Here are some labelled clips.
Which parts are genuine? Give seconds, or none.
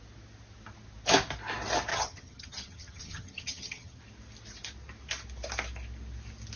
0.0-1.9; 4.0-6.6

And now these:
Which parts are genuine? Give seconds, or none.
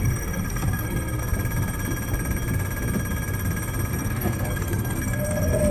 1.2-3.9